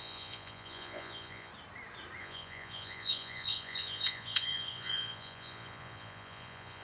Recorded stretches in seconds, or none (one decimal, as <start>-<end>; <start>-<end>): 1.5-2.2